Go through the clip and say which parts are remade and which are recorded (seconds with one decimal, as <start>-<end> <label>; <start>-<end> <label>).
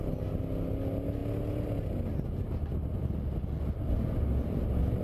0.0-5.0 recorded